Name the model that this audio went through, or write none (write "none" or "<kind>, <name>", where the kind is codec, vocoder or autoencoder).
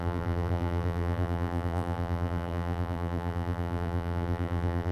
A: vocoder, BigVGAN v2